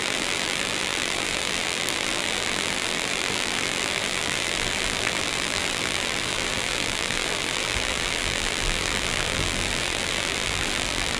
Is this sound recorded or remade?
remade